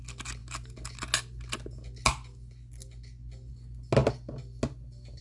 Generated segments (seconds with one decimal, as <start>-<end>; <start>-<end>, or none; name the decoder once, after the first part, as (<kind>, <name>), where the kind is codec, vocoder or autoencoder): none